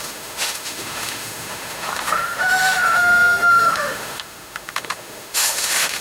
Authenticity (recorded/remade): remade